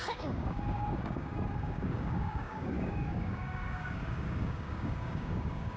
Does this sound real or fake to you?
fake